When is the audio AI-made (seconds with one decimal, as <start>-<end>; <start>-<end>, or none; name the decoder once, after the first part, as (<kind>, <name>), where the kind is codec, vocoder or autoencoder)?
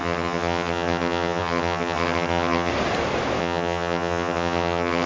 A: 0.0-2.7 (vocoder, HiFi-GAN); 3.4-5.1